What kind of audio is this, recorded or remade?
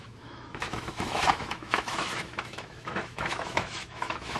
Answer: remade